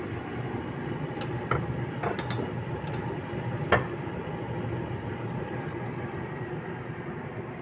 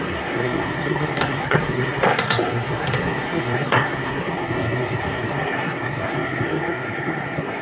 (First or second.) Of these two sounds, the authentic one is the first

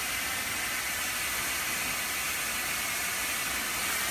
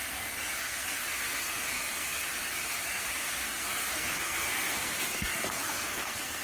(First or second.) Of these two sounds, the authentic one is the first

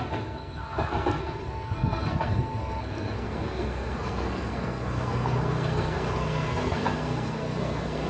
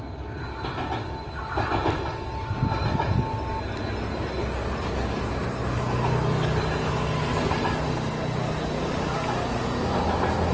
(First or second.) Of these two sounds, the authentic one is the second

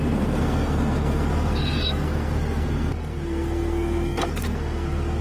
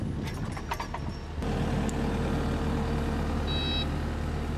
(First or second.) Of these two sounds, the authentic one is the second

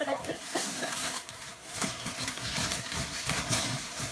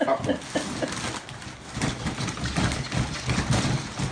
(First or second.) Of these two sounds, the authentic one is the second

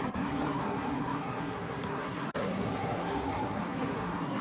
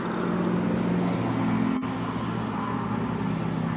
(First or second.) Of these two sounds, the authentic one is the second